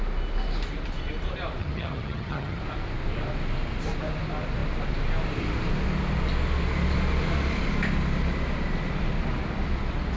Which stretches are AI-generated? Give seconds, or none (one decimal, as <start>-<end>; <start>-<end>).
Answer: 1.6-2.6